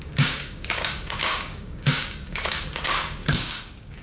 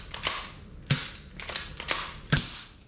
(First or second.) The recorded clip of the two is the second